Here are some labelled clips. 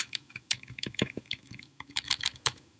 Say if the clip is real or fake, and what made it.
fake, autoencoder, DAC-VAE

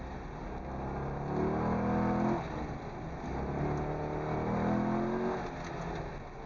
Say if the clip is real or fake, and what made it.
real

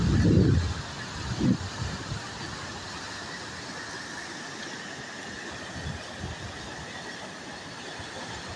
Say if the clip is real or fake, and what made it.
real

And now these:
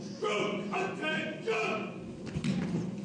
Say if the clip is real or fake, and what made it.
real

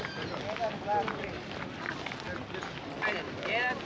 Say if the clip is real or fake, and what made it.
real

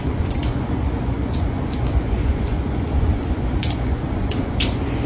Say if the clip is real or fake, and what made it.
fake, vocoder, Vocos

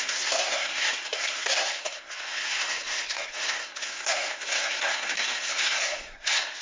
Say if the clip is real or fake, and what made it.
fake, codec, SNAC